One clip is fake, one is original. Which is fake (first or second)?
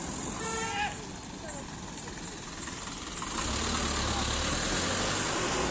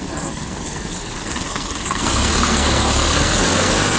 second